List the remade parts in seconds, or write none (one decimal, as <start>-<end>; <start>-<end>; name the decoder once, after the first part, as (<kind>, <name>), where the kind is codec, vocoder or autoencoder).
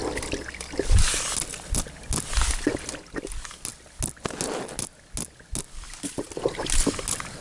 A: none